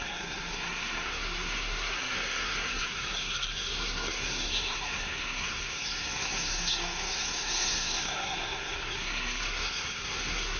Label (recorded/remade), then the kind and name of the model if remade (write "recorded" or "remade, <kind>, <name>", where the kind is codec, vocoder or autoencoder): remade, codec, SNAC